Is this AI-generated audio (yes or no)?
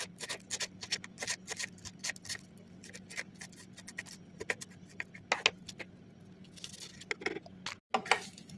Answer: no